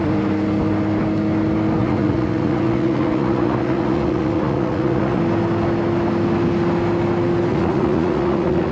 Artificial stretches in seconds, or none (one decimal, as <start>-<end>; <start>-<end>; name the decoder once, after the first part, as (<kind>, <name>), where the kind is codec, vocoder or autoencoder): 1.8-5.2 (vocoder, Vocos); 7.5-8.7